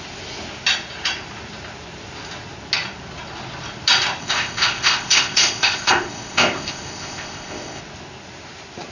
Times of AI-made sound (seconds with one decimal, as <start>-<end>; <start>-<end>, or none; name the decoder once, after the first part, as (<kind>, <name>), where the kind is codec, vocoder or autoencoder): 4.2-7.8 (codec, ZipCodec)